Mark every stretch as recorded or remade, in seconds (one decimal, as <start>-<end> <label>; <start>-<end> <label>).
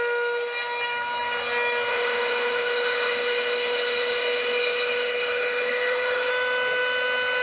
0.0-1.9 recorded; 1.9-6.3 remade; 6.3-7.4 recorded